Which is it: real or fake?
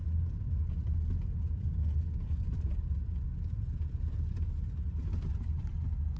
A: real